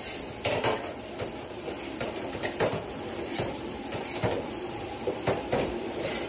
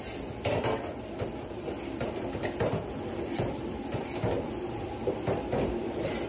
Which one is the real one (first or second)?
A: second